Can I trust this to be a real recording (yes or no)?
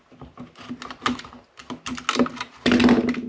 yes